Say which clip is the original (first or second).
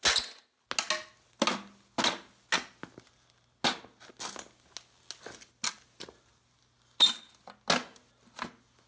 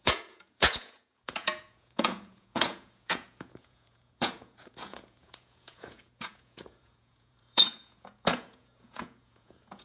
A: first